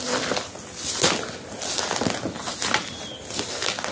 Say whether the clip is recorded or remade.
recorded